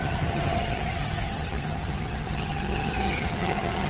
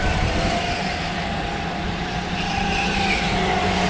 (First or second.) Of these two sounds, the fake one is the first